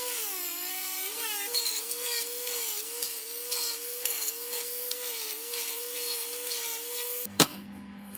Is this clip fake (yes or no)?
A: yes